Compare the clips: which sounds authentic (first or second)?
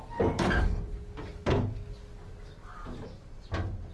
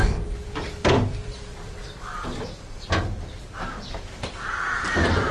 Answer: first